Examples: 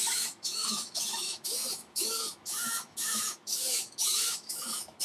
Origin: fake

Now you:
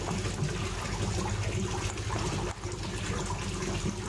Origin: real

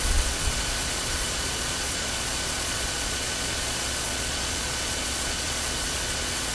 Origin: fake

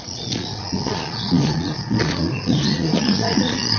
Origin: fake